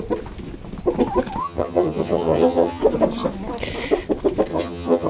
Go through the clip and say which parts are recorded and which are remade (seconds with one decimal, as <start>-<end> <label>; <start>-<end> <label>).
0.0-1.4 recorded; 1.4-2.8 remade; 2.8-4.5 recorded; 4.5-5.1 remade